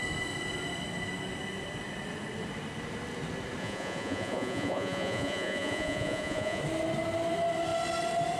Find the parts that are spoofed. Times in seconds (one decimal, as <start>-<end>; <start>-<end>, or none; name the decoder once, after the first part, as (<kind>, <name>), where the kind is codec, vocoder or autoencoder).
3.6-6.6 (vocoder, Vocos)

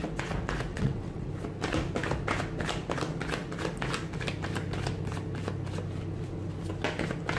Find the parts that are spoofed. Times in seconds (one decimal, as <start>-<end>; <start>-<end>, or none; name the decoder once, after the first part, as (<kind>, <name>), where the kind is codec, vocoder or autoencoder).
0.7-1.3 (vocoder, WaveNeXt)

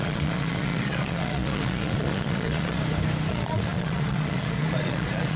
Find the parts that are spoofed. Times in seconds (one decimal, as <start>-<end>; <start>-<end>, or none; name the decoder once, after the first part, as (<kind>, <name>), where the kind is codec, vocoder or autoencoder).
0.0-2.8 (vocoder, Vocos); 3.3-5.4

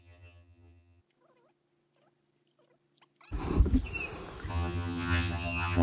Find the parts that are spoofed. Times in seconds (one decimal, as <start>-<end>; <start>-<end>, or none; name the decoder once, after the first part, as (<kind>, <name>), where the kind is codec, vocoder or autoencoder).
0.0-1.0 (vocoder, HiFi-GAN); 4.5-5.8

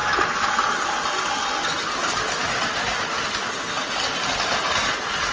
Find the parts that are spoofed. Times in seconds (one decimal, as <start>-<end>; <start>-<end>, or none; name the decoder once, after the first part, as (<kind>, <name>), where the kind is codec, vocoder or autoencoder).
0.0-1.0 (vocoder, BigVGAN v2); 1.6-2.4

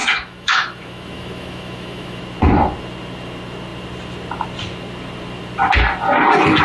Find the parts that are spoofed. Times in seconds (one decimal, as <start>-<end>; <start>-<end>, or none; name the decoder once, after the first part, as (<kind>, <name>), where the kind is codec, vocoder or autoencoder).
0.0-2.2 (autoencoder, DAC-VAE)